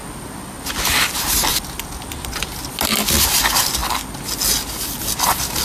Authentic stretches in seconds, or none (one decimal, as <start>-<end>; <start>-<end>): 0.0-5.6